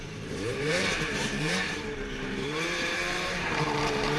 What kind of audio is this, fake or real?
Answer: fake